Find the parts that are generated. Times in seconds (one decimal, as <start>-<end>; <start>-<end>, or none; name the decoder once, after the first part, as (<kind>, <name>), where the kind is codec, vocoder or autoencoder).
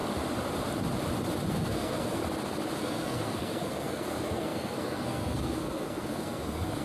1.5-2.2 (codec, SNAC); 2.8-6.8